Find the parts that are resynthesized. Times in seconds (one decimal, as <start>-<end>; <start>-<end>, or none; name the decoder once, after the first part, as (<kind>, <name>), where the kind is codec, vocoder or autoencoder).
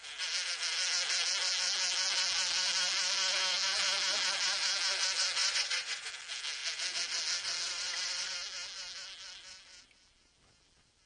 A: 5.4-6.1 (vocoder, Vocos)